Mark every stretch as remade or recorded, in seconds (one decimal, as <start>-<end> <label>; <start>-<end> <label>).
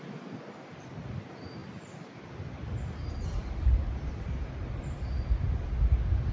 0.0-6.3 recorded